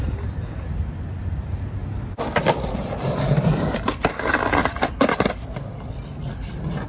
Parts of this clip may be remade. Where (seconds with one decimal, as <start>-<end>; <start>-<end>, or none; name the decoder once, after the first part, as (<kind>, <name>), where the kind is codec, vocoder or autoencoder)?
1.8-4.0 (vocoder, BigVGAN v2)